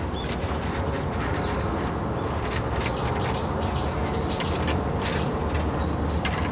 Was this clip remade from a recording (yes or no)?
no